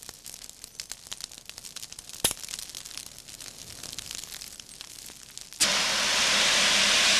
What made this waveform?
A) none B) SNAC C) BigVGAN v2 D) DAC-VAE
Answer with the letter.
A